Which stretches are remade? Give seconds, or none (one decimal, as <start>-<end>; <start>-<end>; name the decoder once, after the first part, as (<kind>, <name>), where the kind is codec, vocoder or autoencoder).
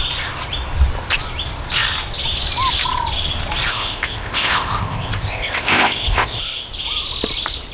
3.7-6.7 (codec, ZipCodec)